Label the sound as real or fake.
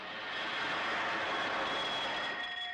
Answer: real